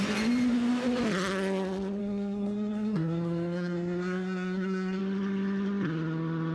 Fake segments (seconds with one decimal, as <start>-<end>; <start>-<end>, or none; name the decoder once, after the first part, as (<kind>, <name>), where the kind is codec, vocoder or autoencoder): 2.0-5.0 (codec, SNAC)